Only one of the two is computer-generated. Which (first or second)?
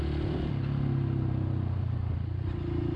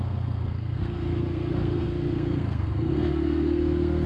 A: second